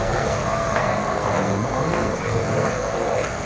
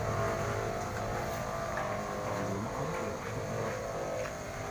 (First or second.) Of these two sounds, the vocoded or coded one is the first